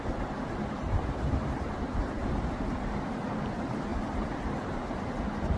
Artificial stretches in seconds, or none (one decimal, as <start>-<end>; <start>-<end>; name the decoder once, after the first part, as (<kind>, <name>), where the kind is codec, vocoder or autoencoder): 0.0-3.9 (vocoder, BigVGAN v2)